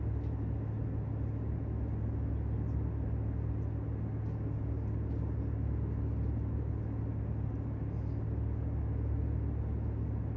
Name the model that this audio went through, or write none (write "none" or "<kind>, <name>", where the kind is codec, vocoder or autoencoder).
none